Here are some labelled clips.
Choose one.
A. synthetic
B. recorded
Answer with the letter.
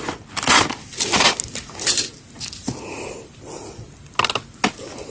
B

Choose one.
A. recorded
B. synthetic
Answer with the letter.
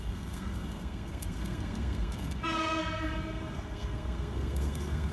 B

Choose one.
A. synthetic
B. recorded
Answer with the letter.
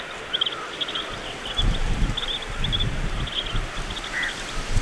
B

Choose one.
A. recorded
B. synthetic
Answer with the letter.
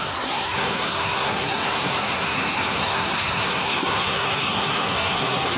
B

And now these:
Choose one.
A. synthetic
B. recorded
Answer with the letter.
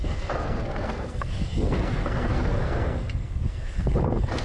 A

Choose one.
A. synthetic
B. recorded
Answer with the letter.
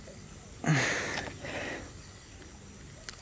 B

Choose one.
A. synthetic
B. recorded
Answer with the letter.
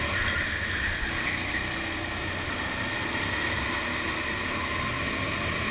B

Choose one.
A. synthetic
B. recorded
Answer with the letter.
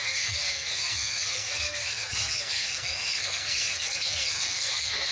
A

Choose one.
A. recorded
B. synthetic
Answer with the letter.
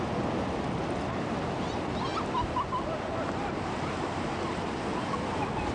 A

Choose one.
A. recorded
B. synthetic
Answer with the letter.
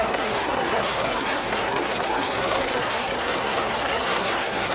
B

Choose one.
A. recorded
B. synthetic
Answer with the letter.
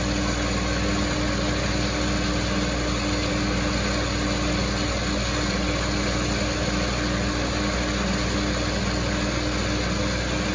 A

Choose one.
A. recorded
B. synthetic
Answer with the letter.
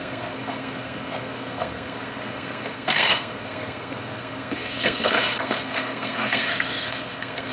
B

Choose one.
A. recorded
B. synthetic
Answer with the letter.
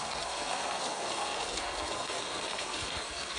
B